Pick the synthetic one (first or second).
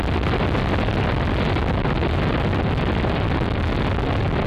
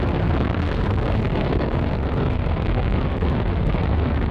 second